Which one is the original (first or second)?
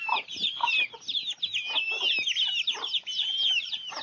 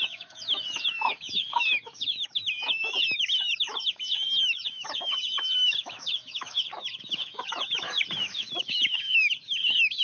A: first